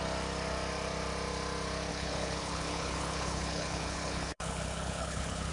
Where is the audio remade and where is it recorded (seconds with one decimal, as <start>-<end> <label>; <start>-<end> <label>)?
0.0-1.9 recorded; 1.9-5.5 remade